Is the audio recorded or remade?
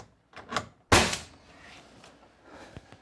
recorded